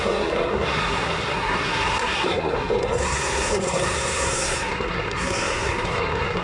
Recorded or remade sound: remade